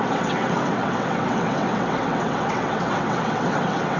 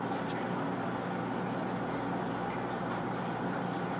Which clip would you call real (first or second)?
second